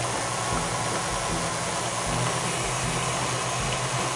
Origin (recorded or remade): recorded